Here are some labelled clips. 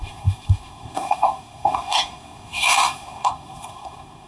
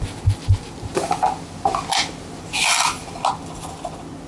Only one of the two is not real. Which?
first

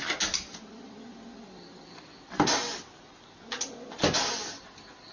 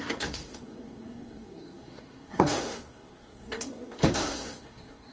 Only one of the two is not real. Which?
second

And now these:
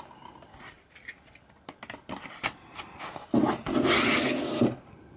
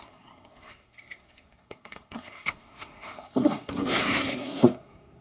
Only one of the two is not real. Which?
second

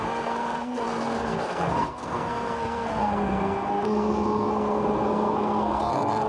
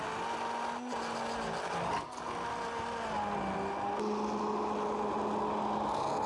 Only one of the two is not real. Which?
first